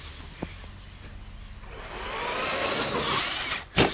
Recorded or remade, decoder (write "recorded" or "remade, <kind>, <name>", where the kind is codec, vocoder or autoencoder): recorded